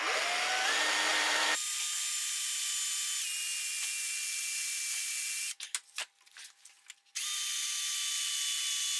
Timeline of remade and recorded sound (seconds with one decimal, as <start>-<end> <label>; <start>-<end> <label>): 0.0-1.1 recorded; 1.1-2.8 remade; 2.8-9.0 recorded